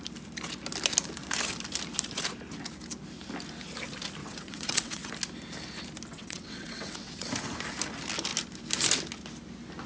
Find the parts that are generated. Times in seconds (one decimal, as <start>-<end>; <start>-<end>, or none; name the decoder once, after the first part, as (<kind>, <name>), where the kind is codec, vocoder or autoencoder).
4.2-5.1 (vocoder, WaveNeXt); 6.1-7.3